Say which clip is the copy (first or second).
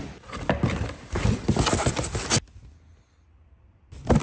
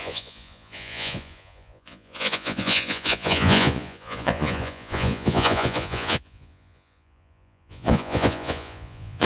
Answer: second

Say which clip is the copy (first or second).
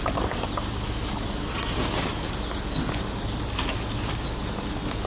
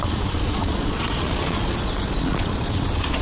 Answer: second